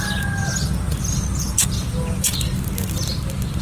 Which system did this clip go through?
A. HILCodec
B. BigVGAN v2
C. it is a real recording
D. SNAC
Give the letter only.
C